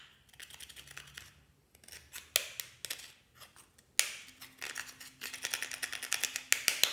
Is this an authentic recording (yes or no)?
yes